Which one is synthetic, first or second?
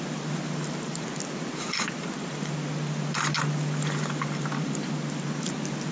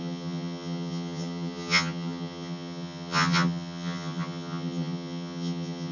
second